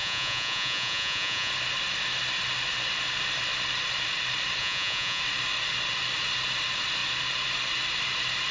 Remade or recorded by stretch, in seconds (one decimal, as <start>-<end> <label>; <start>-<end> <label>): 0.0-1.5 remade; 1.5-4.6 recorded; 4.6-5.2 remade; 5.2-8.5 recorded